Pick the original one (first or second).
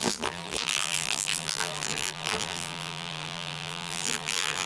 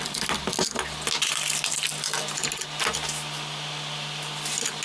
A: second